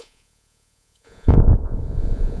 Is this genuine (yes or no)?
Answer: no